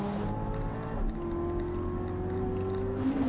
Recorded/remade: recorded